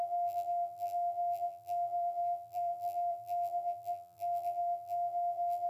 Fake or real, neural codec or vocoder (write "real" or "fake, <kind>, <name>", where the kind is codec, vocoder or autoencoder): fake, vocoder, BigVGAN v2